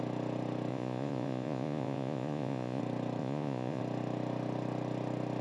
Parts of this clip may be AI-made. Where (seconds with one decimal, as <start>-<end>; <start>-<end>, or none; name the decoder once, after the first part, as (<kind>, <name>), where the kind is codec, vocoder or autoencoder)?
0.7-2.8 (vocoder, Vocos); 3.2-3.8